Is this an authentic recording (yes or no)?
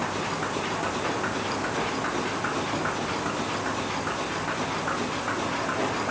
yes